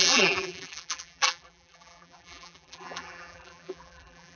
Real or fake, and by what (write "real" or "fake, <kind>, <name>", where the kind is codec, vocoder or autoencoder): fake, vocoder, BigVGAN v2